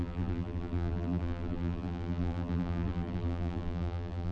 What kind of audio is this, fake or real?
fake